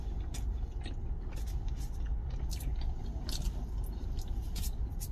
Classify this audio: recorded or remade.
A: recorded